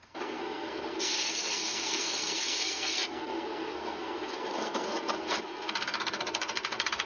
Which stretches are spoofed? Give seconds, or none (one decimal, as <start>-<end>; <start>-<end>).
0.0-7.1